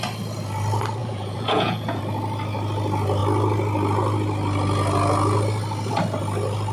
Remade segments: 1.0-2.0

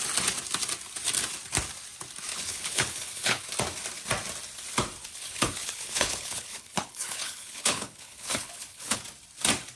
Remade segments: 2.3-3.4; 5.0-9.0

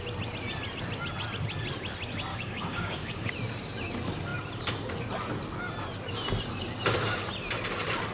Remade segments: 2.3-3.3